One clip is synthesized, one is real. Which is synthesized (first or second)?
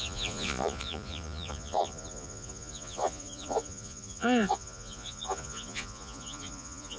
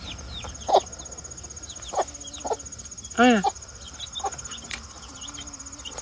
first